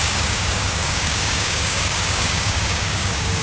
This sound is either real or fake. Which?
fake